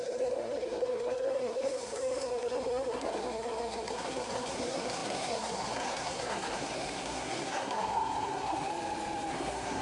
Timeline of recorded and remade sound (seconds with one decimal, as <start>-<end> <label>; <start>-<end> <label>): 0.0-8.7 remade; 8.7-9.3 recorded; 9.3-9.8 remade